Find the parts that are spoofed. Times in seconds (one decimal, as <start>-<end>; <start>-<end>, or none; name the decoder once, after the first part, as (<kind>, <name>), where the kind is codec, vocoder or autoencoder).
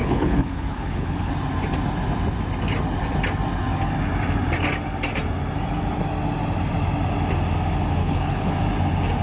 0.0-1.3 (codec, HILCodec); 8.0-8.5